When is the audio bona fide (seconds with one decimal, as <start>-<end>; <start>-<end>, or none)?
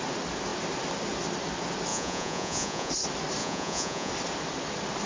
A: 0.0-1.9; 2.9-3.4; 4.1-5.1